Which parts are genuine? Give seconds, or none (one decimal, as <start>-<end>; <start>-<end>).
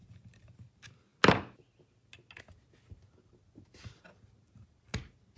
0.0-5.4